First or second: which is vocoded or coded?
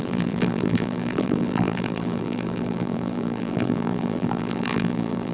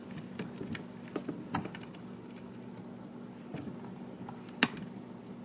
first